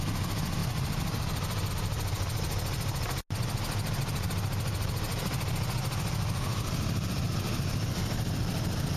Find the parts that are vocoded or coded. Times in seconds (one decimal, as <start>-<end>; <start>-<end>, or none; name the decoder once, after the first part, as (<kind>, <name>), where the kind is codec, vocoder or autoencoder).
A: 0.6-1.7 (vocoder, BigVGAN v2); 6.5-7.2